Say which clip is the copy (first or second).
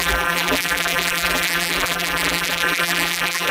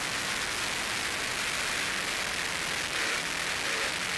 first